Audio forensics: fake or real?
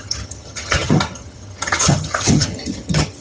fake